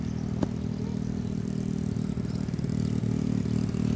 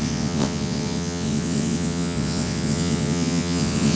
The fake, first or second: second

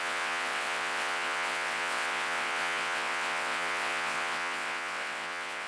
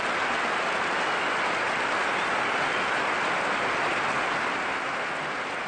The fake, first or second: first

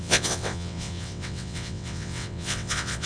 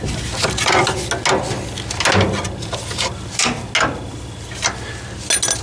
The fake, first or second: first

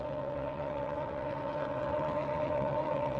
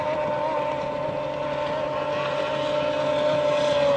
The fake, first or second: first